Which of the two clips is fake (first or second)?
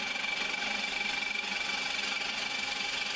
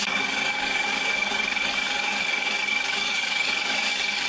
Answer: second